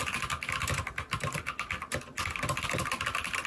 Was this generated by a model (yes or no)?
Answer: no